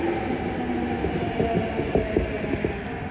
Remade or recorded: recorded